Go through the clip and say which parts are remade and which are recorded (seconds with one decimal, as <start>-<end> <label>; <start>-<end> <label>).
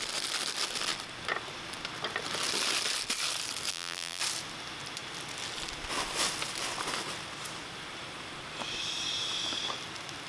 0.0-3.7 recorded; 3.7-4.2 remade; 4.2-10.3 recorded